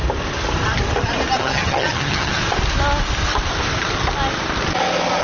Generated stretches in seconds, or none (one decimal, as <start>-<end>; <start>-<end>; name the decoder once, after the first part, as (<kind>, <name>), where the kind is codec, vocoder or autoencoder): 1.4-2.4 (vocoder, HiFi-GAN)